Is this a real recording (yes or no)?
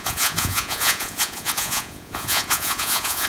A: no